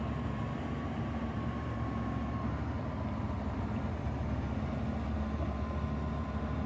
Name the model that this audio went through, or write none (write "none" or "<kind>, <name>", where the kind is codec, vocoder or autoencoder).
vocoder, BigVGAN v2